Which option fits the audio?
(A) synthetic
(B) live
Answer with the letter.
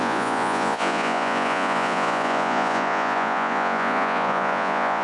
A